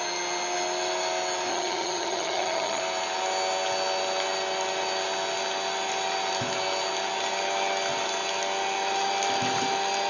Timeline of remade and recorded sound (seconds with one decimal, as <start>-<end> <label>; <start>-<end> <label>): 0.0-1.5 recorded; 1.5-2.8 remade; 2.8-10.1 recorded